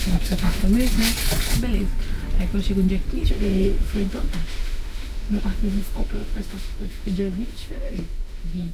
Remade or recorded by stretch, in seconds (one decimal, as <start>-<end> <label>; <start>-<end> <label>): 0.0-0.6 remade; 0.6-3.3 recorded; 3.3-8.7 remade